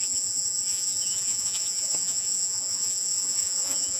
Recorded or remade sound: remade